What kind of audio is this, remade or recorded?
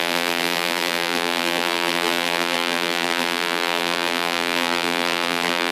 remade